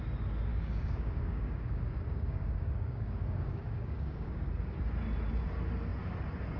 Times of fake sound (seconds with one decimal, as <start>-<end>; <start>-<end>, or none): 0.5-4.5